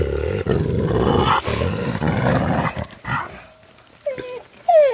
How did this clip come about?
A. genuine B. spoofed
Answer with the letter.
A